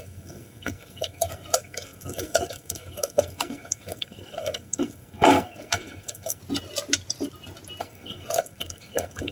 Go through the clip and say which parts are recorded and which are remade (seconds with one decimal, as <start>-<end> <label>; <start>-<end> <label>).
0.0-6.4 remade; 6.4-7.8 recorded; 7.8-9.3 remade